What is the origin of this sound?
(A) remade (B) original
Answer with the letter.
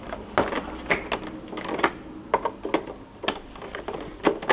B